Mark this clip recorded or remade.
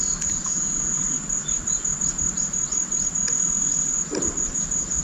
recorded